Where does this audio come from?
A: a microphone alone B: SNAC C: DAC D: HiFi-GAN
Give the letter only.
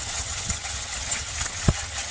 D